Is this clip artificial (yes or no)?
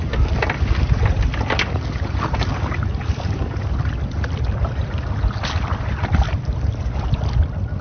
no